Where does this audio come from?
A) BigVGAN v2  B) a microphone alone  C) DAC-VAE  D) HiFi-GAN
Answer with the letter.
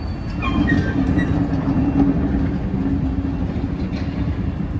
B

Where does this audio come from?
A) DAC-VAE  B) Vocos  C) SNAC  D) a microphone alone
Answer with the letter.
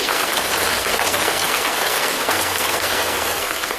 C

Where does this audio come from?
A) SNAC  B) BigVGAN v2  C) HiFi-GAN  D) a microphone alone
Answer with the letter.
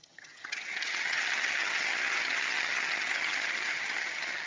C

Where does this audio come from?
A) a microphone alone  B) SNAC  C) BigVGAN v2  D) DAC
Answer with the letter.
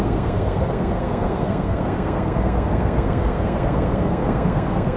B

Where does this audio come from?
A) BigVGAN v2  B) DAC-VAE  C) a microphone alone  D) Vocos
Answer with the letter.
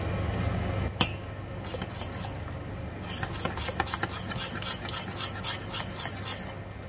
C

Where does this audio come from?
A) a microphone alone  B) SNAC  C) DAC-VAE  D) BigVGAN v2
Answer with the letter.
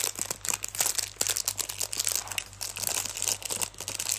A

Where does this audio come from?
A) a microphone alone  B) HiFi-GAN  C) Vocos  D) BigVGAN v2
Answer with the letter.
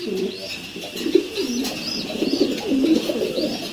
A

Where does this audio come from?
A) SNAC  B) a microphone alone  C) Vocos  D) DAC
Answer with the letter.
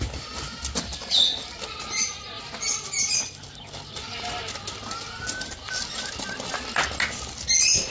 B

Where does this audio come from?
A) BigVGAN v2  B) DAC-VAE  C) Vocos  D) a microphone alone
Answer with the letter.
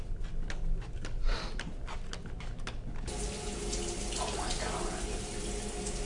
D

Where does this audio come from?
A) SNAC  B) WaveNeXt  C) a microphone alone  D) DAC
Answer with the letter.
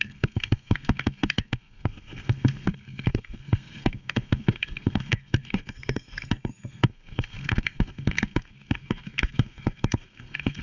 A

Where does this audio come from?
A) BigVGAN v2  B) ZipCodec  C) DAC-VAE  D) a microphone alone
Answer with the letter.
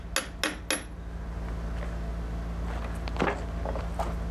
D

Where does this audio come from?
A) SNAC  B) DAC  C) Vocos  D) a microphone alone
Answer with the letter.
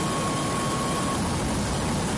D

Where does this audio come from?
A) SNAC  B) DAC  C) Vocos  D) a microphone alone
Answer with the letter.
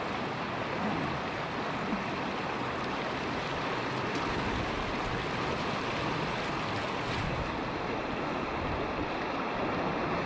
D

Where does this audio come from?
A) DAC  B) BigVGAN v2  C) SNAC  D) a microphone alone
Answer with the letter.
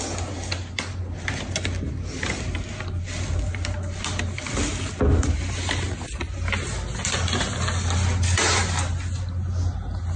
D